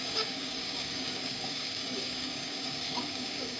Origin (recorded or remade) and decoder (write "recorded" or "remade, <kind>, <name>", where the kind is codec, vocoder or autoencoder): remade, codec, DAC